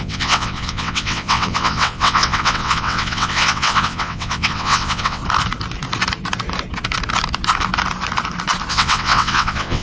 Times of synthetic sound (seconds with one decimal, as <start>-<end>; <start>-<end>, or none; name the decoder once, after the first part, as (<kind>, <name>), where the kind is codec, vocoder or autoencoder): 0.0-5.2 (vocoder, WaveNeXt); 8.7-9.8